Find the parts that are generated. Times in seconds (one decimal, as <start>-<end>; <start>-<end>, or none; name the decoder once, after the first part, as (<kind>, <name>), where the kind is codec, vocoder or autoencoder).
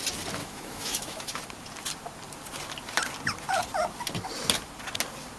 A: 0.4-1.3 (autoencoder, DAC-VAE)